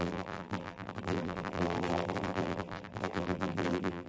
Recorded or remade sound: remade